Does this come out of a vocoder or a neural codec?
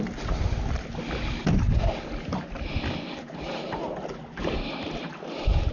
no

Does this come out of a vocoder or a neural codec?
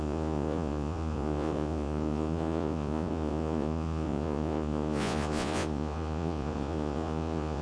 yes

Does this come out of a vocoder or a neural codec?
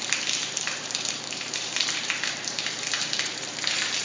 yes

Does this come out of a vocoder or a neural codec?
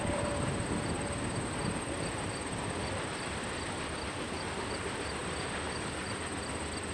yes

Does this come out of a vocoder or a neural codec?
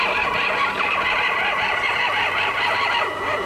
no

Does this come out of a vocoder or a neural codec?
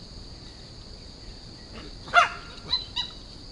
no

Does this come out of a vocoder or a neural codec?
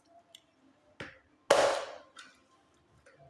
no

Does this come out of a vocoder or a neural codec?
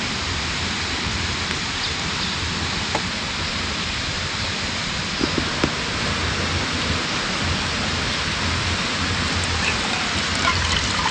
no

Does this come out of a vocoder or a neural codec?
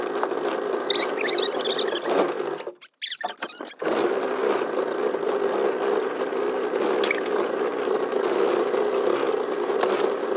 no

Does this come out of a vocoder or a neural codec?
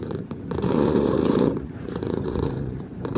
yes